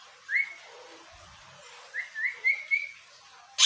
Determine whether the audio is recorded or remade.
recorded